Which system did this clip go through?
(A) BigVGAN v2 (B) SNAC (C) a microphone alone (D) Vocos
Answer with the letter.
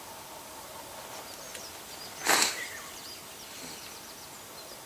C